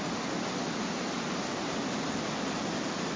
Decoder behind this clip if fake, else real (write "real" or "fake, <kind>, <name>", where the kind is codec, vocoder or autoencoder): real